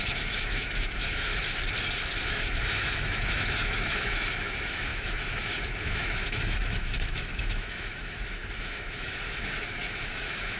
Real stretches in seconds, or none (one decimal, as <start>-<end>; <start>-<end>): 1.3-2.2